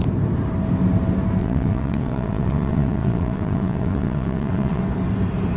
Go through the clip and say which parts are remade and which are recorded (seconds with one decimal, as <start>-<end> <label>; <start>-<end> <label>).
0.0-1.4 recorded; 1.4-4.8 remade; 4.8-5.6 recorded